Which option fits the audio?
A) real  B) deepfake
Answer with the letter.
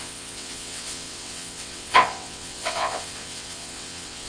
B